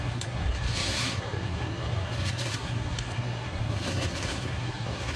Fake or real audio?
fake